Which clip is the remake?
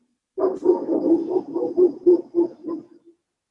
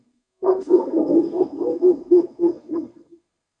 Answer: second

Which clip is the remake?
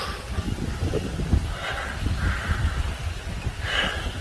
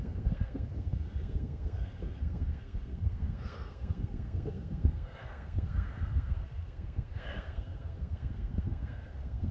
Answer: second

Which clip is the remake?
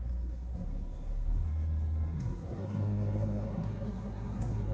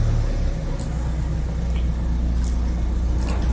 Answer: first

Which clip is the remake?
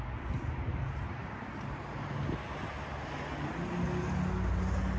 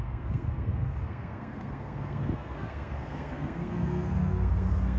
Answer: second